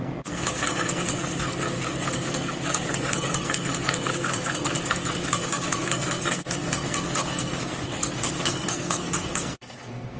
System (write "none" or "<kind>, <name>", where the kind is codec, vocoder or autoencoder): codec, SNAC